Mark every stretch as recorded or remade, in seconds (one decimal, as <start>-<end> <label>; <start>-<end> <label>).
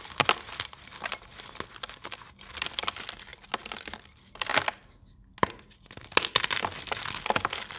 0.0-7.8 recorded